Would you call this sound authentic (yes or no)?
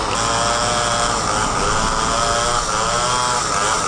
yes